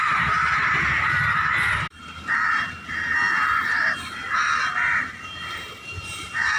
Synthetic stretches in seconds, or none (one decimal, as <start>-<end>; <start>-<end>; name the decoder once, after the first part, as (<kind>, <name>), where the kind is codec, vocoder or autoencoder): 0.0-6.6 (vocoder, BigVGAN v2)